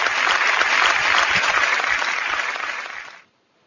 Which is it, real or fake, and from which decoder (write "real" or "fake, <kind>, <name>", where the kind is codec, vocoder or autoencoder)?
real